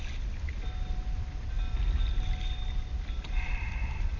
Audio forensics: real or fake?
real